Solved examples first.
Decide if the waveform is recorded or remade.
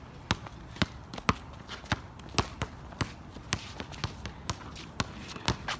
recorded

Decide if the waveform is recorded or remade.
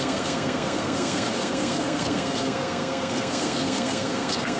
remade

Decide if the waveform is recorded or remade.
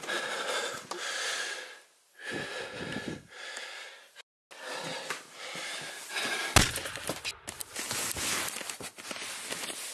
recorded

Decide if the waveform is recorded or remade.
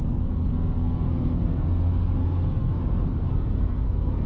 remade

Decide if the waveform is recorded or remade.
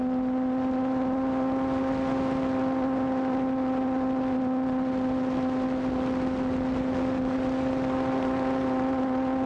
recorded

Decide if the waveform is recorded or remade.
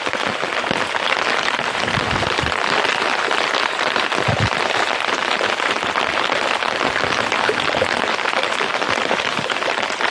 recorded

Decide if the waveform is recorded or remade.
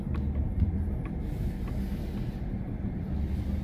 recorded